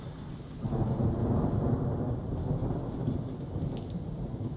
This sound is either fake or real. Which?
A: real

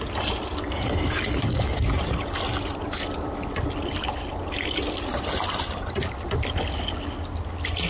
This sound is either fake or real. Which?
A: real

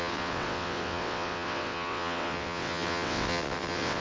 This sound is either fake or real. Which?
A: fake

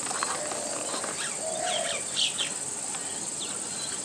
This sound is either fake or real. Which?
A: real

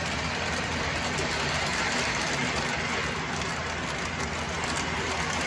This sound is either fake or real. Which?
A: real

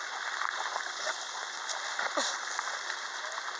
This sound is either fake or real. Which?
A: real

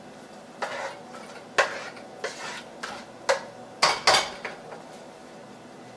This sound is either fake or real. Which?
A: real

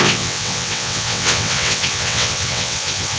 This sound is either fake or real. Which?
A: fake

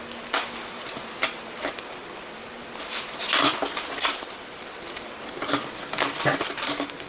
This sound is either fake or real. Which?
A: real